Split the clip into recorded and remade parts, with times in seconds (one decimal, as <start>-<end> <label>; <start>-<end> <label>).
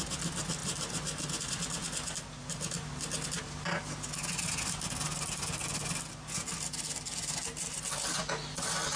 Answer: 0.0-9.0 recorded